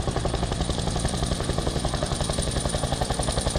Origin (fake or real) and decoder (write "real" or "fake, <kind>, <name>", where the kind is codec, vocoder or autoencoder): fake, vocoder, BigVGAN v2